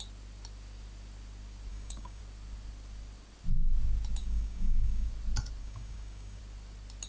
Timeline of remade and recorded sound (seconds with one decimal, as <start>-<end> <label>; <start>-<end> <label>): 0.0-1.7 recorded; 1.7-2.2 remade; 2.2-4.2 recorded; 4.2-5.1 remade; 5.1-5.6 recorded; 5.6-6.4 remade; 6.4-7.1 recorded